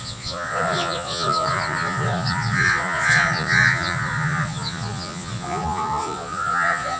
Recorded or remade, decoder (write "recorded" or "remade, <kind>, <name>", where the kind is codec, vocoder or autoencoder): remade, vocoder, Vocos